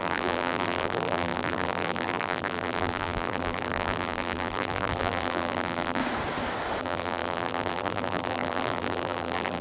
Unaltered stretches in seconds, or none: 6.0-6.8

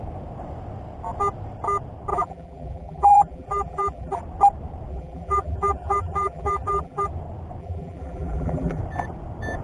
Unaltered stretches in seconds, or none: 0.0-2.1; 4.2-4.9; 7.1-7.6; 8.8-9.6

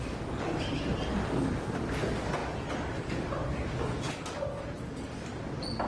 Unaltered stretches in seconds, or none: none